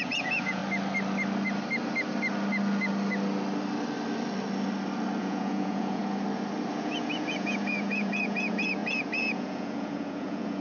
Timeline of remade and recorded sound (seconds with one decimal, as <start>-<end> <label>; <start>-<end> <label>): 0.0-0.6 remade; 0.6-5.2 recorded; 5.2-6.0 remade; 6.0-6.7 recorded; 6.7-10.6 remade